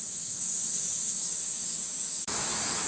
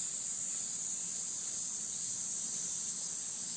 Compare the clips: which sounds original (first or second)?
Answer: second